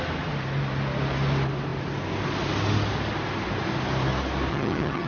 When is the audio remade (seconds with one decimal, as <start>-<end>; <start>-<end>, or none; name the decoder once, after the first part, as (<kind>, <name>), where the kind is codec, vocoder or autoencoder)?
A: 4.5-5.1 (vocoder, HiFi-GAN)